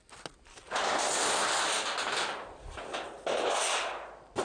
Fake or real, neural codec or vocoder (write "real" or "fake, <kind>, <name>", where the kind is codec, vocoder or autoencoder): real